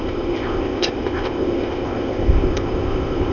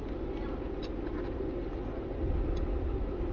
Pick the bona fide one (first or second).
second